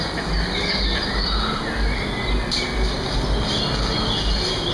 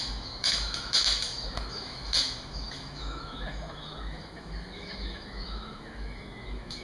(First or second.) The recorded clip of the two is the first